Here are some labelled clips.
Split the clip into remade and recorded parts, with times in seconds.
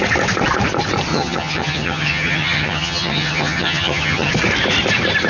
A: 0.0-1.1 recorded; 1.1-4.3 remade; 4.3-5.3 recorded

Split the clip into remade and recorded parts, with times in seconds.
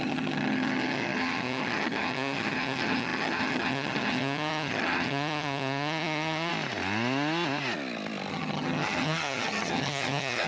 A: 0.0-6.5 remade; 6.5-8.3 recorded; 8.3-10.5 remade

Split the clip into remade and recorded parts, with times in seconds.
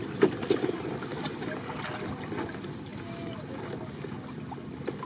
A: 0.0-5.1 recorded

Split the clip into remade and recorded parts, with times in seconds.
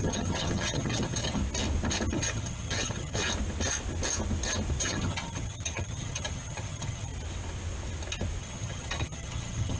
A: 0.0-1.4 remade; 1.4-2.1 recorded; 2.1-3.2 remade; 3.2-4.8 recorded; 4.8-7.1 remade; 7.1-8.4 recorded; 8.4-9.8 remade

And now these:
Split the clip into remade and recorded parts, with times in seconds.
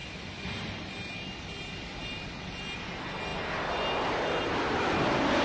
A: 0.0-5.4 recorded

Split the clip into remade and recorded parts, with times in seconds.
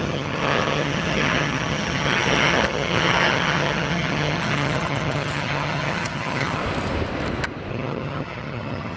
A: 0.0-6.6 remade; 6.6-7.7 recorded; 7.7-9.0 remade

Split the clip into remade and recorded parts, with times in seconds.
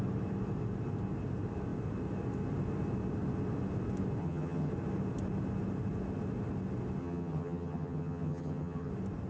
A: 0.0-4.2 recorded; 4.2-4.7 remade; 4.7-7.0 recorded; 7.0-8.9 remade; 8.9-9.3 recorded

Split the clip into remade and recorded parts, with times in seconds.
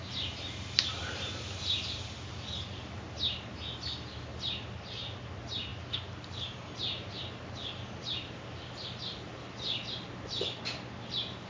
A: 0.0-11.5 recorded